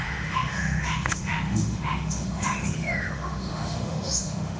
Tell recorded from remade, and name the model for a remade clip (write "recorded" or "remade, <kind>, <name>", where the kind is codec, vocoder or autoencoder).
remade, autoencoder, DAC-VAE